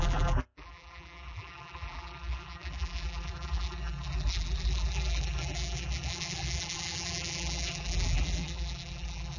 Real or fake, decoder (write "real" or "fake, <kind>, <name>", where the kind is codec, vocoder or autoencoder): fake, vocoder, BigVGAN v2